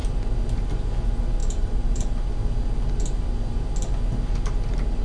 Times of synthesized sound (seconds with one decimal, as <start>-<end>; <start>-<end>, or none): 1.4-2.3